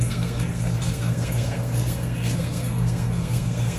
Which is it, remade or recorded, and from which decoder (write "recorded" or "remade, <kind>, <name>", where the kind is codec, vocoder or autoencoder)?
remade, codec, SNAC